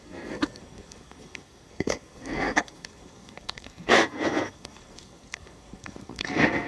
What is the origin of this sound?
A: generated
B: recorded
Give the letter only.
A